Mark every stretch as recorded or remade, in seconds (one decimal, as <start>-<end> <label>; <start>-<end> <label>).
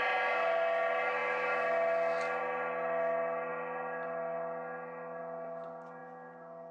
0.0-6.7 recorded